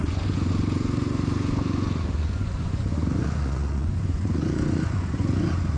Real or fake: fake